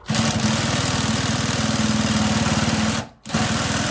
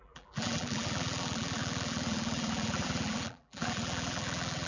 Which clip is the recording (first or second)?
first